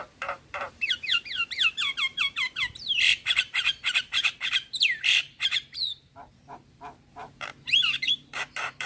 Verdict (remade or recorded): remade